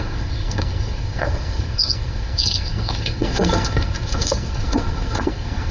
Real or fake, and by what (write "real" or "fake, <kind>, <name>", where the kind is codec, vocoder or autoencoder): fake, codec, SNAC